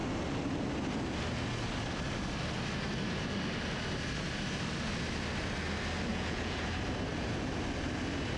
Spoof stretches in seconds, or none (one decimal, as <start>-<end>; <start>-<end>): 6.1-6.6